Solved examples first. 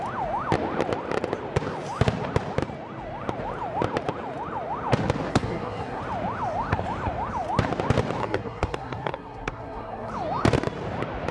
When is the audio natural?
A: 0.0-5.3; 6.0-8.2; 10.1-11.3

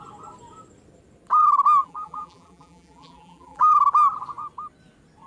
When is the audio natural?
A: 0.0-1.8; 3.7-5.3

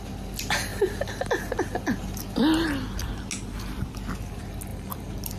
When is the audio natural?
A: 0.0-4.7

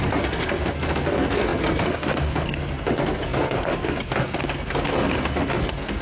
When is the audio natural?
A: none

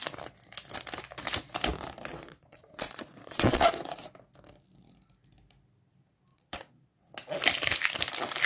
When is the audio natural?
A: 0.0-2.1; 4.0-6.3; 7.1-8.5

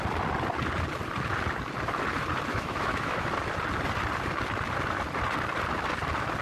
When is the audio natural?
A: 0.0-2.5; 3.3-6.4

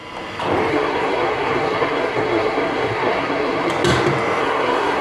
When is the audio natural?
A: 0.0-0.7; 3.7-4.4